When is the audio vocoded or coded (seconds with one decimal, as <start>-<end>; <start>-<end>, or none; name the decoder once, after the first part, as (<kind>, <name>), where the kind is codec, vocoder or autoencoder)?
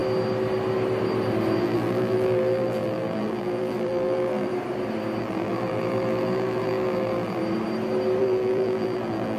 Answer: 1.6-4.5 (vocoder, BigVGAN v2); 5.2-7.4; 8.2-9.4